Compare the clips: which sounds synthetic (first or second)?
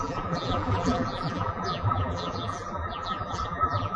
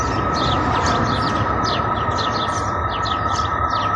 first